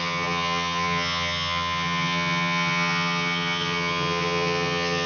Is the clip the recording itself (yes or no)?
no